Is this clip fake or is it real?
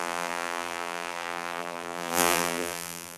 fake